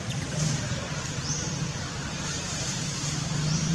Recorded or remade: remade